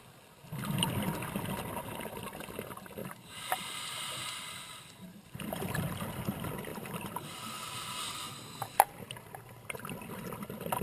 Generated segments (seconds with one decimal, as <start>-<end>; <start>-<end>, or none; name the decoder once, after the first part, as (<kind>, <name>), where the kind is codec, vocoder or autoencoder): 3.0-5.9 (vocoder, BigVGAN v2); 6.7-7.2